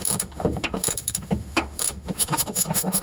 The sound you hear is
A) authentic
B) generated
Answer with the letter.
B